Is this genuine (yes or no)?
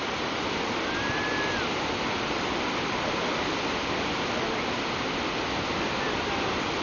yes